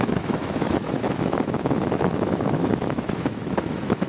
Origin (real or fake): fake